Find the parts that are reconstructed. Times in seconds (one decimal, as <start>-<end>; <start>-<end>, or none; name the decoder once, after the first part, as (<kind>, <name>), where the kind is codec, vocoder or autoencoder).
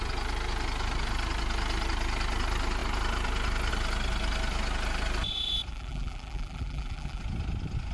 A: 5.7-7.2 (vocoder, BigVGAN v2)